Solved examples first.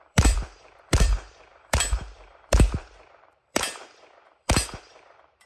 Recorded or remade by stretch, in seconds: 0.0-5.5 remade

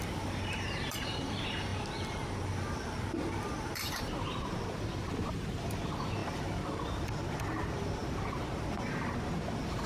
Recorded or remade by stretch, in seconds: 0.0-1.7 remade; 1.7-2.4 recorded; 2.4-9.9 remade

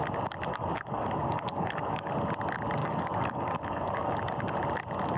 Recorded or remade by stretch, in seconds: 0.0-0.5 recorded; 0.5-2.1 remade; 2.1-2.8 recorded; 2.8-4.1 remade; 4.1-5.2 recorded

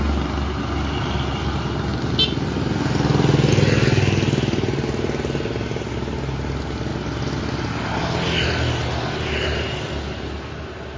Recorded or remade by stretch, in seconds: 0.0-11.0 recorded

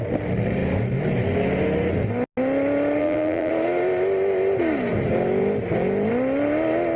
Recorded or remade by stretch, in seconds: 0.0-3.0 recorded; 3.0-3.5 remade; 3.5-7.0 recorded